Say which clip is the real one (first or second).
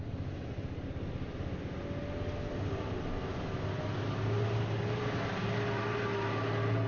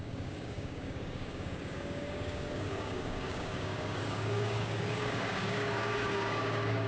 first